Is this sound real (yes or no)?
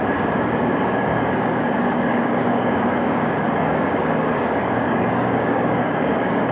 no